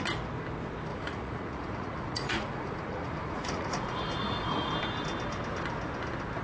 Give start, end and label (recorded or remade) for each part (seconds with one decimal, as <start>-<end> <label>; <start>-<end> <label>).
0.0-0.9 recorded; 0.9-4.7 remade; 4.7-6.4 recorded